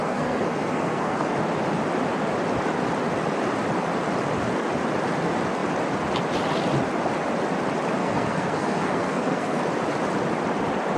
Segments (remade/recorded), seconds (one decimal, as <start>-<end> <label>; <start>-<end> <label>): 0.0-1.3 remade; 1.3-8.0 recorded; 8.0-9.6 remade; 9.6-11.0 recorded